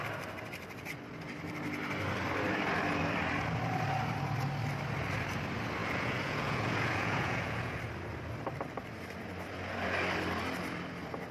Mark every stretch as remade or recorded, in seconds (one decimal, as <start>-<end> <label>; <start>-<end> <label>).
0.0-5.8 recorded; 5.8-7.8 remade; 7.8-11.3 recorded

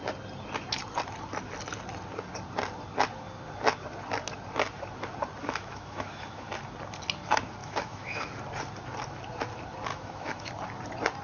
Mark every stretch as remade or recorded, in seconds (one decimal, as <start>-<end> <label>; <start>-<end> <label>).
0.0-5.4 recorded; 5.4-6.5 remade; 6.5-7.6 recorded; 7.6-8.3 remade; 8.3-9.9 recorded; 9.9-10.5 remade; 10.5-11.2 recorded

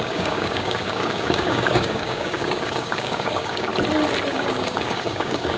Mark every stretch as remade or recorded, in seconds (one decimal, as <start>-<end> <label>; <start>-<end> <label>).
0.0-3.7 remade; 3.7-4.3 recorded; 4.3-5.6 remade

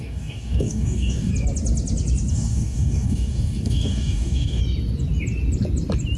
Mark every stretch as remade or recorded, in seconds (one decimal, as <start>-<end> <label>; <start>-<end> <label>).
0.0-1.3 remade; 1.3-2.3 recorded; 2.3-4.6 remade; 4.6-6.2 recorded

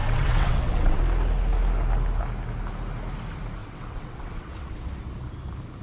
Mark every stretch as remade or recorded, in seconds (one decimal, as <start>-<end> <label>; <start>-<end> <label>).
0.0-1.0 remade; 1.0-3.6 recorded; 3.6-4.9 remade; 4.9-5.8 recorded

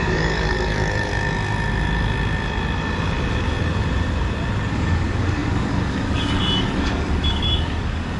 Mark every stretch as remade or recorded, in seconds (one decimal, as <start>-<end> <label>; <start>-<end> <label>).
0.0-1.1 remade; 1.1-4.7 recorded; 4.7-8.2 remade